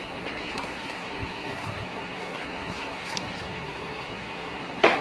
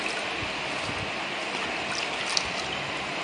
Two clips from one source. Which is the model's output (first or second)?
first